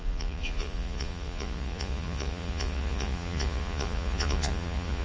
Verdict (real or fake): fake